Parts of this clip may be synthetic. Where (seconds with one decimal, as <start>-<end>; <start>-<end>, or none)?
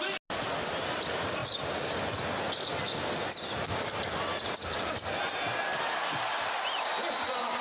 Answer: none